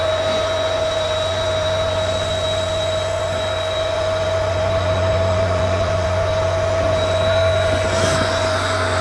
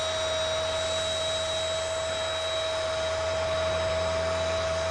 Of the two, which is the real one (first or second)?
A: second